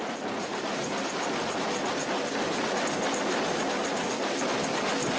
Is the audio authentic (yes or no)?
yes